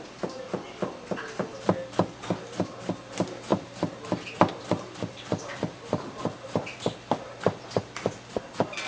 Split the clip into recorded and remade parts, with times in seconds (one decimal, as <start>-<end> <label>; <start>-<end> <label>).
0.0-3.5 recorded; 3.5-7.8 remade; 7.8-8.9 recorded